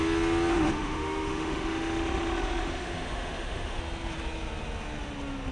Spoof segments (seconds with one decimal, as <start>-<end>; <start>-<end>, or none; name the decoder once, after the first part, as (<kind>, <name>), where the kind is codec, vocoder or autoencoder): 0.5-3.8 (autoencoder, DAC-VAE)